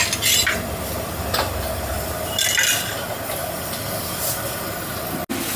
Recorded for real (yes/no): yes